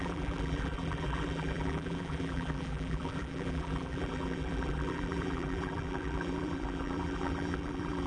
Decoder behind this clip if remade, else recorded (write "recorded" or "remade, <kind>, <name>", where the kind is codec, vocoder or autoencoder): remade, vocoder, BigVGAN v2